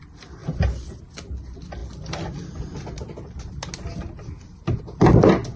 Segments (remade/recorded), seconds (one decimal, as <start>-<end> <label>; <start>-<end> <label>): 0.0-5.6 recorded